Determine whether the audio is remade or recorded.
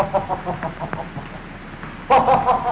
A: recorded